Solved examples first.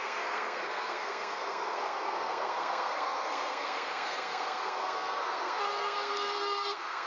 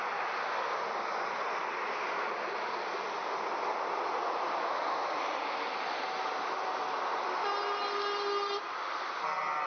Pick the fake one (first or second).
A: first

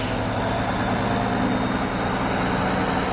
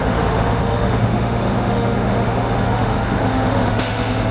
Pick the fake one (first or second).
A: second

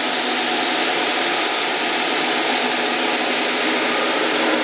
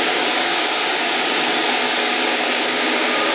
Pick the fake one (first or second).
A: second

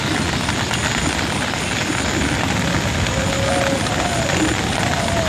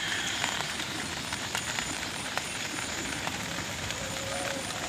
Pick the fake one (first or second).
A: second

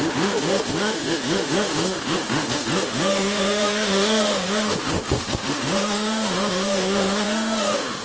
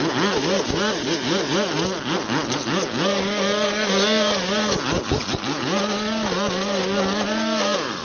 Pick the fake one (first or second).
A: first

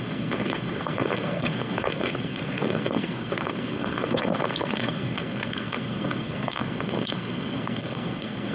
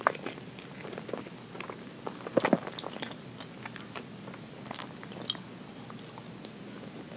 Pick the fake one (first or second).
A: first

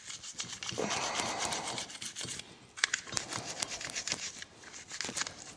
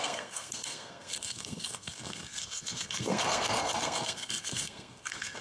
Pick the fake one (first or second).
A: second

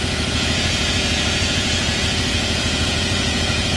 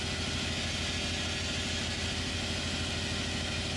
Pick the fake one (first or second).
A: first